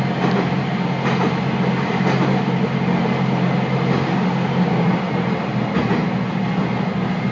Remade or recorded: recorded